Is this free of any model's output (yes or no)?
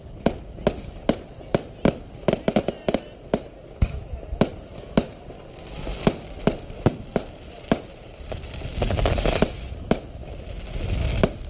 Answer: yes